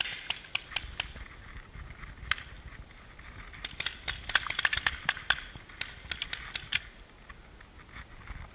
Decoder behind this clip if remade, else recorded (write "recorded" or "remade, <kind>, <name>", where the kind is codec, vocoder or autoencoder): recorded